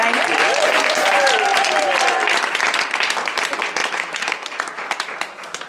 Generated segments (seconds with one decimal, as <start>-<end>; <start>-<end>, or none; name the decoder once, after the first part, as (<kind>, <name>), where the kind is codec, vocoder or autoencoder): 3.8-4.6 (autoencoder, DAC-VAE)